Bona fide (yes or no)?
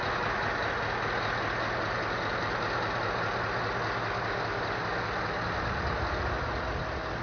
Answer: yes